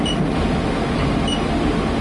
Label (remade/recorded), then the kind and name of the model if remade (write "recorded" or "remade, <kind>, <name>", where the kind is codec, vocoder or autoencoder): recorded